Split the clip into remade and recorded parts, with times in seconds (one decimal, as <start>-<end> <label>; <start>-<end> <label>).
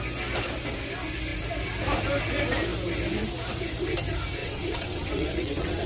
0.0-4.4 recorded; 4.4-5.9 remade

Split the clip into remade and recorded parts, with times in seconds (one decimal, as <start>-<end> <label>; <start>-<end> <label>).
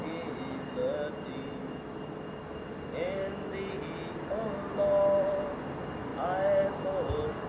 0.0-7.5 recorded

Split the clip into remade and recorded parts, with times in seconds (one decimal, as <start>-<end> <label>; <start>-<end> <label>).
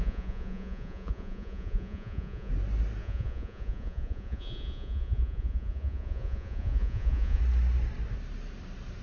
0.0-2.5 remade; 2.5-3.0 recorded; 3.0-7.4 remade; 7.4-9.0 recorded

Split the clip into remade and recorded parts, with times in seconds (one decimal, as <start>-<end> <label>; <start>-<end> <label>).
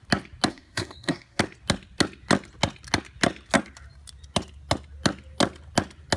0.0-0.5 recorded; 0.5-1.4 remade; 1.4-6.2 recorded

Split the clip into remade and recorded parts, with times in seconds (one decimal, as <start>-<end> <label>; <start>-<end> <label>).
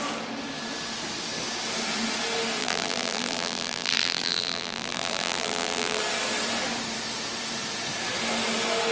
0.0-2.6 recorded; 2.6-6.0 remade; 6.0-8.9 recorded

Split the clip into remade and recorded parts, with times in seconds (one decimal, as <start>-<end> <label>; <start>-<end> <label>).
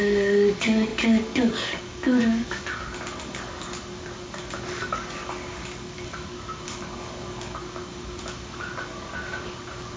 0.0-10.0 remade